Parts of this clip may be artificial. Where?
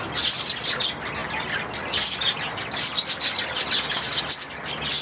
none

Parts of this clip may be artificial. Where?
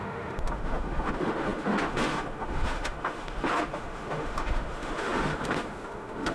0.0-6.3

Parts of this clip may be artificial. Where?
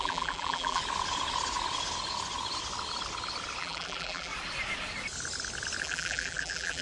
0.0-0.8; 3.6-4.3; 5.8-6.8